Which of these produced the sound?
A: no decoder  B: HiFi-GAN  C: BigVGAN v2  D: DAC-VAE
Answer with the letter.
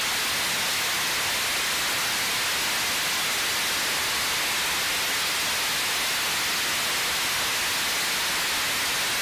A